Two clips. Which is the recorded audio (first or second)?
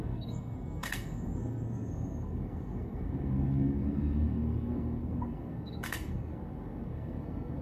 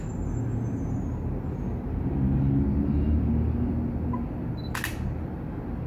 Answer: second